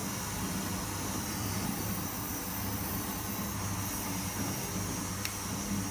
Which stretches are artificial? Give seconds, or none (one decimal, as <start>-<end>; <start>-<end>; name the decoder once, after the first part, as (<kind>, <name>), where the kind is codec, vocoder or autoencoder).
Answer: 0.0-3.3 (vocoder, BigVGAN v2)